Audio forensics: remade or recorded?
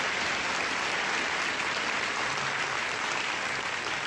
recorded